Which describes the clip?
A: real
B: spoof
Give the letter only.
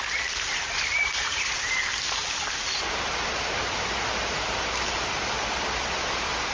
A